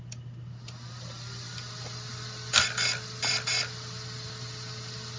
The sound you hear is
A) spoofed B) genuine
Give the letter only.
B